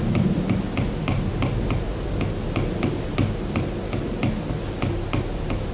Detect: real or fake real